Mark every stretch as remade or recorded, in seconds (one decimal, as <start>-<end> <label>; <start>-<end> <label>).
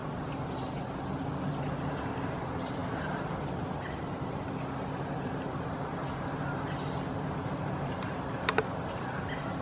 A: 0.0-9.6 recorded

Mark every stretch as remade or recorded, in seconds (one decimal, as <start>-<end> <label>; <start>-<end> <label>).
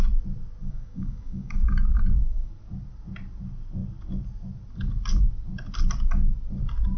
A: 0.0-0.6 recorded; 0.6-2.5 remade; 2.5-7.0 recorded